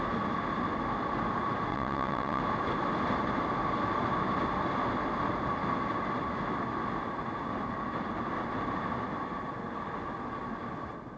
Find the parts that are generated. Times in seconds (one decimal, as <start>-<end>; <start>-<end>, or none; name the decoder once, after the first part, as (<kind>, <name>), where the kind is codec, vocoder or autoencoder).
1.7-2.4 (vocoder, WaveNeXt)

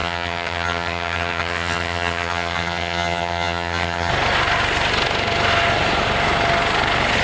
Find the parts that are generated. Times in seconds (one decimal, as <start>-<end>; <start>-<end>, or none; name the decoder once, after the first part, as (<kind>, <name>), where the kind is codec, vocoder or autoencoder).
0.0-4.1 (vocoder, HiFi-GAN)

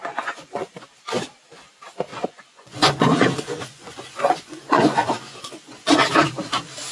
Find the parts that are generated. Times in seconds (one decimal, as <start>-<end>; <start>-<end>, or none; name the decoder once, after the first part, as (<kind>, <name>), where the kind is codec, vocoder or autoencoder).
0.0-0.7 (vocoder, Vocos); 2.1-6.1

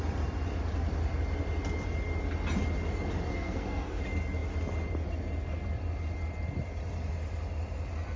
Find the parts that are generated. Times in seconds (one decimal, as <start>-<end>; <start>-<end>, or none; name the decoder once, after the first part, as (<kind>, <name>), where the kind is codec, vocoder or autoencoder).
3.3-4.0 (codec, SNAC)

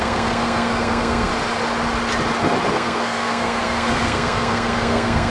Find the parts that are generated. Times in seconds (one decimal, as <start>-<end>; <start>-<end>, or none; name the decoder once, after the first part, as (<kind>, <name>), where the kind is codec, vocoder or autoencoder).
0.0-1.3 (codec, SNAC); 2.7-5.3

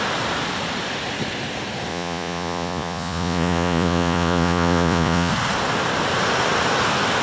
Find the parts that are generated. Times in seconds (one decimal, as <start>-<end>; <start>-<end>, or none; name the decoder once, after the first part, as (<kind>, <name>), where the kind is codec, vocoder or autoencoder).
1.9-5.3 (vocoder, Vocos)

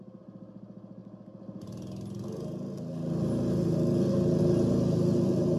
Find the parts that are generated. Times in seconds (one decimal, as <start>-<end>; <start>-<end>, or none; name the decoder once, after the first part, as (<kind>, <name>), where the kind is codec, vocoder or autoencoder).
none